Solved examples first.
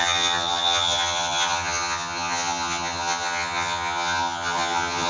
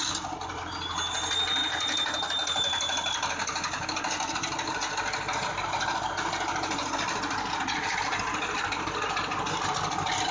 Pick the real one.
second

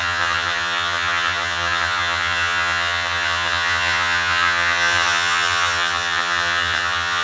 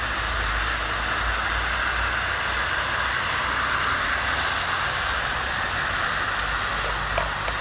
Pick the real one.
second